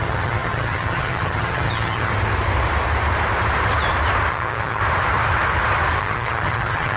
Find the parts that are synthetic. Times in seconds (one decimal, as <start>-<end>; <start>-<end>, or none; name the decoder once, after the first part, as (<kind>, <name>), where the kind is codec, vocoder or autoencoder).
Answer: 0.0-2.1 (vocoder, HiFi-GAN); 4.3-4.8; 6.0-7.0

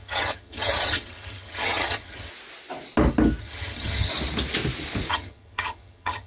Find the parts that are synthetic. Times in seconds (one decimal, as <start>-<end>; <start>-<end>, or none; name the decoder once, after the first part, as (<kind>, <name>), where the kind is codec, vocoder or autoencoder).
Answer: 0.0-2.3 (vocoder, HiFi-GAN); 3.4-4.1; 5.1-6.3

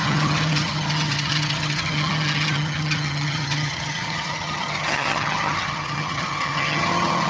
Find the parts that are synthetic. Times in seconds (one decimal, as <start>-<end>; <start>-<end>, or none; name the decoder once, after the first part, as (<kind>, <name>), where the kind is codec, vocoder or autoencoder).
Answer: 0.0-7.3 (vocoder, HiFi-GAN)

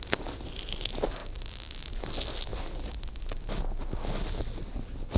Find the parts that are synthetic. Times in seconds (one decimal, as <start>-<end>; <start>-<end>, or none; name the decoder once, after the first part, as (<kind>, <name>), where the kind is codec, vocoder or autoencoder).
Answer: none

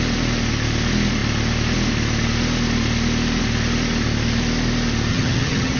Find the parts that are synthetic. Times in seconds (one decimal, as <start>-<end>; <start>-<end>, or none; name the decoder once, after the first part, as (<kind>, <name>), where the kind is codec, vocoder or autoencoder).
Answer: 5.1-5.8 (vocoder, HiFi-GAN)

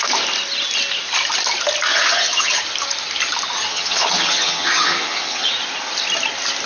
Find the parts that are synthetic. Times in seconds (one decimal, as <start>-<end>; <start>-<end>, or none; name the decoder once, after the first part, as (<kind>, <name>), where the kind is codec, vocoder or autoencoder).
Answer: 1.9-2.6 (vocoder, HiFi-GAN); 3.7-5.5

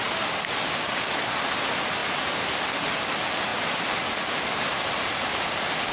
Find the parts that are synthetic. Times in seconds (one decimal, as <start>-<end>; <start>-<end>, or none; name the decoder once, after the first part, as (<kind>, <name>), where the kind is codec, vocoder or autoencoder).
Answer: none

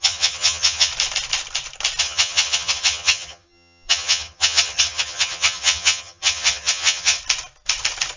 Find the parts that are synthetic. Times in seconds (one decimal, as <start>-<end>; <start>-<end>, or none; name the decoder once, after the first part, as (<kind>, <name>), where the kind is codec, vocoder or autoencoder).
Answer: 0.0-0.9 (vocoder, HiFi-GAN); 2.0-7.2